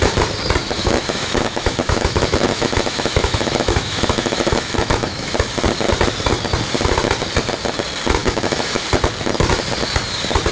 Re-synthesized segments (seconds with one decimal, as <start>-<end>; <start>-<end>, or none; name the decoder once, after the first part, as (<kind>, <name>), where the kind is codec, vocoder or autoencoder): 0.6-5.3 (autoencoder, DAC-VAE); 8.2-8.8